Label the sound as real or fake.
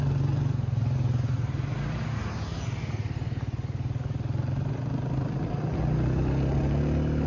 real